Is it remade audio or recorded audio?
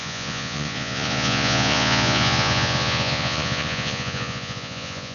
remade